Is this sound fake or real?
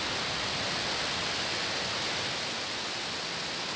real